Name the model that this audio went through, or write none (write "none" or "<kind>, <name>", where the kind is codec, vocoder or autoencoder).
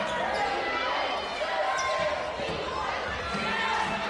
none